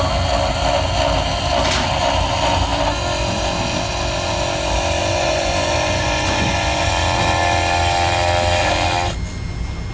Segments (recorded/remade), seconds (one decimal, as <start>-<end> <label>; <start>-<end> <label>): 0.0-5.0 recorded; 5.0-6.9 remade; 6.9-9.9 recorded